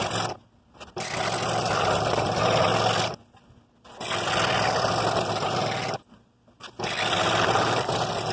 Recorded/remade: recorded